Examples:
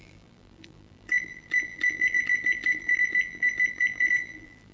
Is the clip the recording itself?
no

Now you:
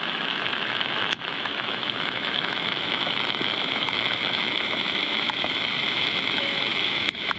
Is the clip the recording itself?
no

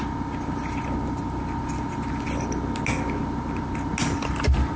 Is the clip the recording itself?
yes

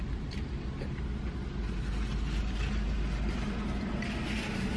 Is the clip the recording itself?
yes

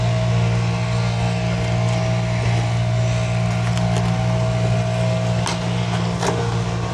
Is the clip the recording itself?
yes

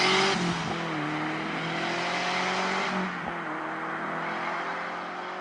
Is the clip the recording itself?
yes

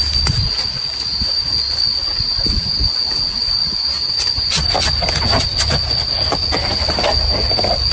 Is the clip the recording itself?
yes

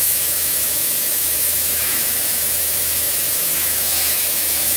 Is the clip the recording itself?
no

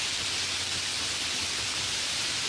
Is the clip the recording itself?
yes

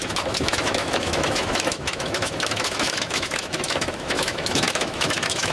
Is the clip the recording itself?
no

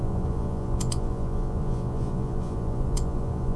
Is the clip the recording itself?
no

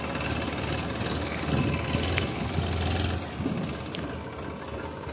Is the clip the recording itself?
yes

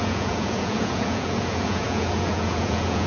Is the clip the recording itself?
no